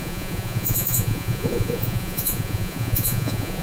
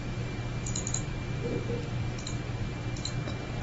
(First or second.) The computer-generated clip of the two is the first